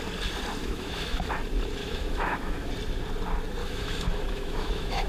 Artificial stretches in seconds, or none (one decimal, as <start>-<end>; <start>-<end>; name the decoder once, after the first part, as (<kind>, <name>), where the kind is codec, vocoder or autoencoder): 0.6-1.3 (autoencoder, DAC-VAE); 1.8-2.7; 3.6-5.1